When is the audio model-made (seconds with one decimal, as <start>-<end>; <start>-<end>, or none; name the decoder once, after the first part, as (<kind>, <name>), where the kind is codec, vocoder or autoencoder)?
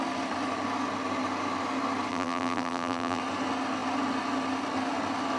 2.1-3.2 (vocoder, BigVGAN v2)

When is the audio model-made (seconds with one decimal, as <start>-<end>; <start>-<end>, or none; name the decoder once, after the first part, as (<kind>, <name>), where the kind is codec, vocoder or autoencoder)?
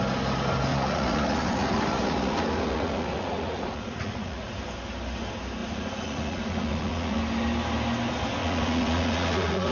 0.7-4.5 (vocoder, Vocos); 5.6-7.2; 8.4-9.7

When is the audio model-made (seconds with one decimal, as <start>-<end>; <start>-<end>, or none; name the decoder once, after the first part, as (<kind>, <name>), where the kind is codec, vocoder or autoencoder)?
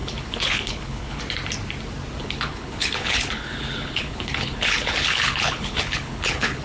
0.0-1.2 (codec, HILCodec); 2.2-6.6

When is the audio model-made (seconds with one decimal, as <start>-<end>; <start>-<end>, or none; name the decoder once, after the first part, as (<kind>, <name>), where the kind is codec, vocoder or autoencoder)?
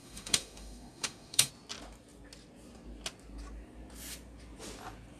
0.0-1.5 (autoencoder, DAC-VAE)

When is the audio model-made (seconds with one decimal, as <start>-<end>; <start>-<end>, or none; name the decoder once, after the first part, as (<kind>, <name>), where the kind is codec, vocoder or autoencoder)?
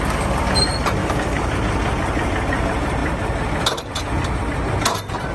1.0-1.5 (codec, DAC)